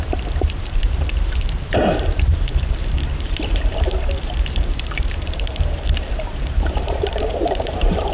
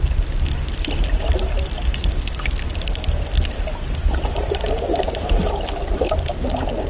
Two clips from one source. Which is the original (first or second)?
second